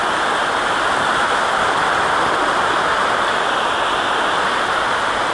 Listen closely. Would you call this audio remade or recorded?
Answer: recorded